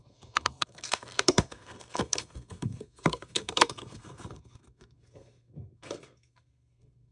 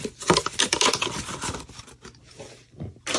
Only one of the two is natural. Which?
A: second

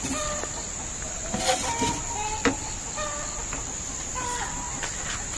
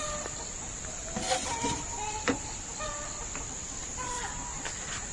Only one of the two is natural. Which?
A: first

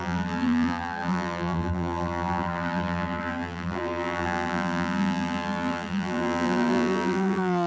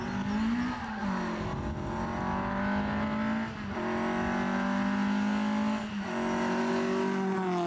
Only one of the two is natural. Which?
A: second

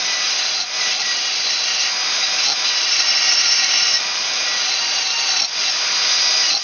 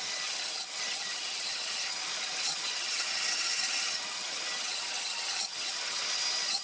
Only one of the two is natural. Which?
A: first